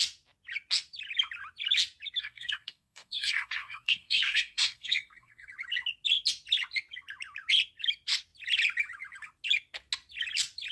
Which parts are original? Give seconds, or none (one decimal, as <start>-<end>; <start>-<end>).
0.0-2.2; 5.5-10.7